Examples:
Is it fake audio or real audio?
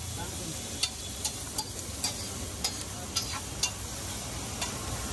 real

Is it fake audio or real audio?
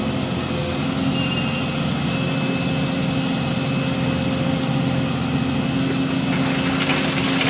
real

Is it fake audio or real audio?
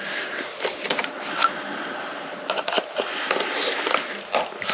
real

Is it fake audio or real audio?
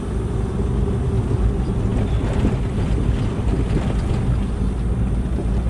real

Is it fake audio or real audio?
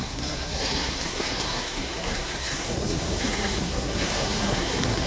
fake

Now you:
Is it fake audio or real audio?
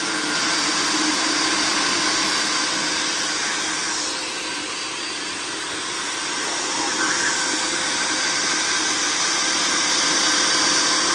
real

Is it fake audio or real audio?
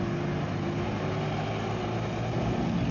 real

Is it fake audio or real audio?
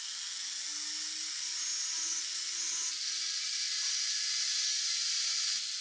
real